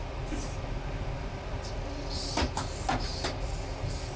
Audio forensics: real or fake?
real